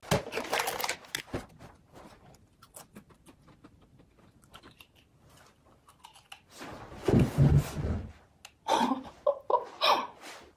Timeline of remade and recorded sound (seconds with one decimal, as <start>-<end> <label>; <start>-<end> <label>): 0.0-7.0 recorded; 7.0-7.8 remade; 7.8-10.6 recorded